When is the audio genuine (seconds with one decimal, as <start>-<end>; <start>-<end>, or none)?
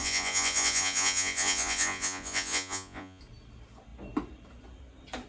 3.2-5.3